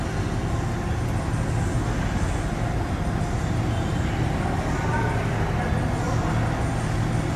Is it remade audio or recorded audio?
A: recorded